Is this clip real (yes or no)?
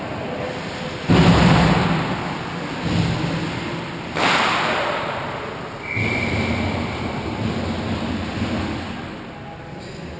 yes